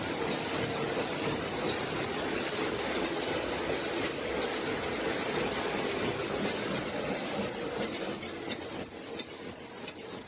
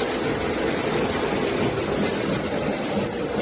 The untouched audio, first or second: second